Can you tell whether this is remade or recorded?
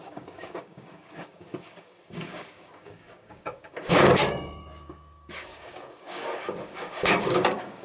remade